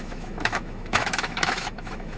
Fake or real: fake